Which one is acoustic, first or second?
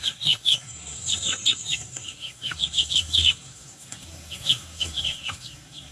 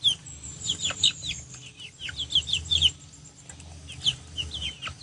second